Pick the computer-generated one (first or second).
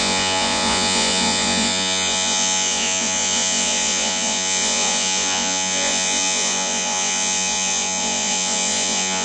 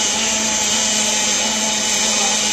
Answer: first